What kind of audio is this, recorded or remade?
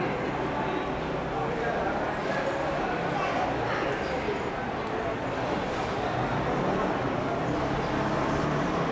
recorded